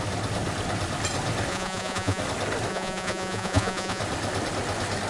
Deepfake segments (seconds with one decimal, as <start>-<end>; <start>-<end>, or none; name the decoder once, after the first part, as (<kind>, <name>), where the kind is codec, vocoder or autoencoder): 1.5-2.2 (vocoder, Vocos); 2.7-4.0